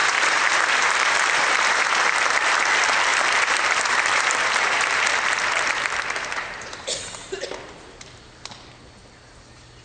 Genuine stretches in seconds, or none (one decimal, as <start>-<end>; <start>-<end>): 2.5-3.1; 7.3-9.8